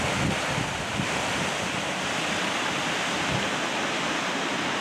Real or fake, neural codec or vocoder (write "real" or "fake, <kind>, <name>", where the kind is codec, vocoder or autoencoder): fake, vocoder, BigVGAN v2